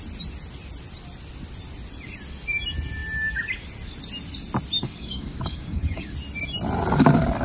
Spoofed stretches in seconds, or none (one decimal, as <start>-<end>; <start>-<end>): 4.8-6.1